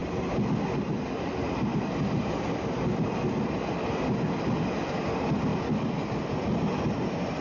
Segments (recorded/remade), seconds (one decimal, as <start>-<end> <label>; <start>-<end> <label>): 0.0-7.4 recorded